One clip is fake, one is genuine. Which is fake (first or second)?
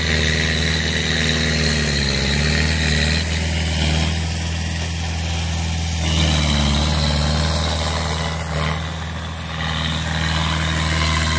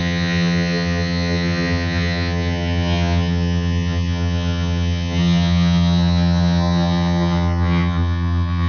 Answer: second